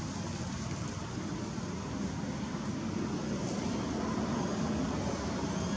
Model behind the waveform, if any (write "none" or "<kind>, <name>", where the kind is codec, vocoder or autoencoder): none